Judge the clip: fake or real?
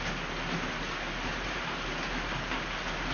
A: real